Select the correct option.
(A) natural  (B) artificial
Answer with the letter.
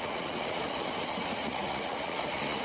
B